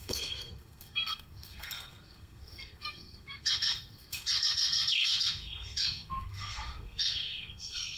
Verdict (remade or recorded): remade